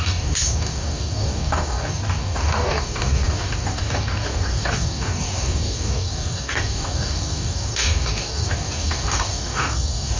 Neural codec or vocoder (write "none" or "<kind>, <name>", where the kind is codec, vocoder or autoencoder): codec, DAC